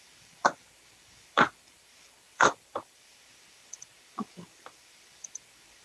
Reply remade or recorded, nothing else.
remade